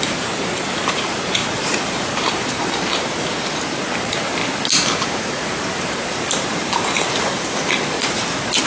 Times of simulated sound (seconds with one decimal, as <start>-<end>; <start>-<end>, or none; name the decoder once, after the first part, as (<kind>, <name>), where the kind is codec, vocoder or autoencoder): 0.0-8.7 (vocoder, BigVGAN v2)